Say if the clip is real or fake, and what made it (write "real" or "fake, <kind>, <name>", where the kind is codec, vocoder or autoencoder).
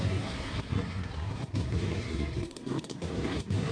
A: fake, codec, SNAC